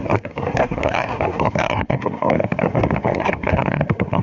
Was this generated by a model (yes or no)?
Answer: yes